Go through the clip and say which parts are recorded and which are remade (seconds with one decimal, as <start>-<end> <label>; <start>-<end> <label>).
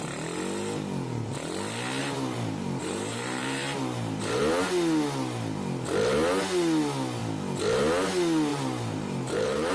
0.0-2.0 recorded; 2.0-4.4 remade; 4.4-8.5 recorded; 8.5-9.7 remade